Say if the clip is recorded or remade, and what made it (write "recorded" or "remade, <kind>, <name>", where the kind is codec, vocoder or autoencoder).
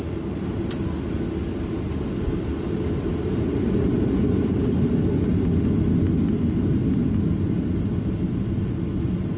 recorded